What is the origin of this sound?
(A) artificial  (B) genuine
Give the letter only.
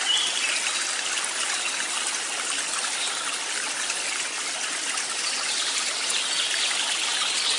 B